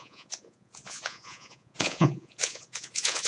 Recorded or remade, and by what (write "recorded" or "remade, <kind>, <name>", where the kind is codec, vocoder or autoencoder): remade, vocoder, Vocos